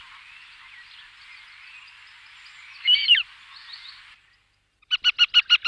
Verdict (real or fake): real